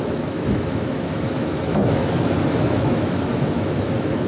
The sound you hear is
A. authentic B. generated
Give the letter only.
B